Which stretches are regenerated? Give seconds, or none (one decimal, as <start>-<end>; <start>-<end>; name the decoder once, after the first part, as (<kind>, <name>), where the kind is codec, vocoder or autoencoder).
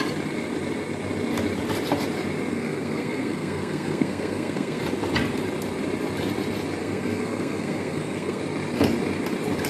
2.5-4.8 (codec, SNAC); 6.8-8.4